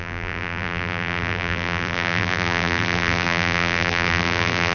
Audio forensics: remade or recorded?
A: remade